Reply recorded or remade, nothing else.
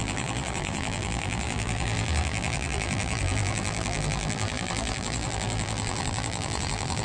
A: remade